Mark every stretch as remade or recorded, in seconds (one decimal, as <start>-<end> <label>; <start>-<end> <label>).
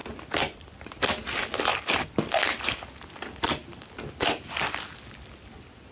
0.0-0.9 remade; 0.9-1.7 recorded; 1.7-2.4 remade; 2.4-5.9 recorded